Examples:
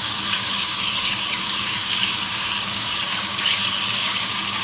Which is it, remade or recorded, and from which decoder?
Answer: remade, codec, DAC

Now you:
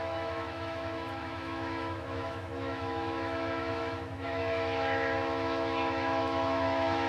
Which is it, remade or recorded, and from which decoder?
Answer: remade, autoencoder, DAC-VAE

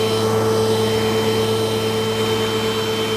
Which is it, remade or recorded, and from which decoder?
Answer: recorded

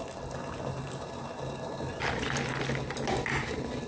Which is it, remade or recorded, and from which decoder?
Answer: recorded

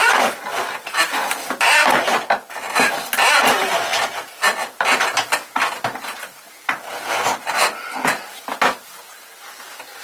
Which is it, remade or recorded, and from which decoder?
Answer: recorded